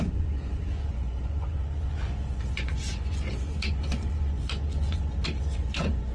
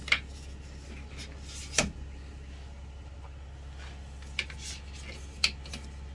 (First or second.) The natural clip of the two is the second